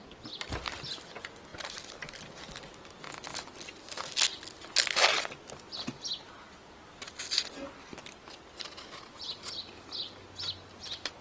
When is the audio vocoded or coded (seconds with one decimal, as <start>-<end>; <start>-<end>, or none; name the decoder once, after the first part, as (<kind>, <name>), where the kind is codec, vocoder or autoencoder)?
1.5-2.4 (vocoder, BigVGAN v2); 5.0-6.1